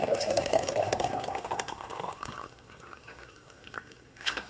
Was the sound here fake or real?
fake